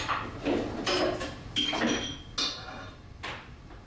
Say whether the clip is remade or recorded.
recorded